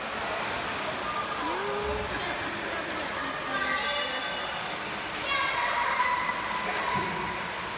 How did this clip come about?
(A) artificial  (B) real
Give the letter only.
B